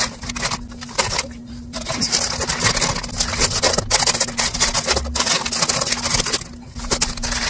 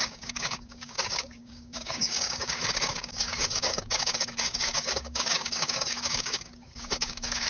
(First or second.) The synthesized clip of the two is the second